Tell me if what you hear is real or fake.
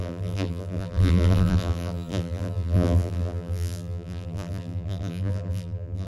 fake